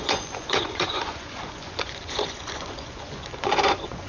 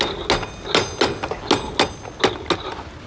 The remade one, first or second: first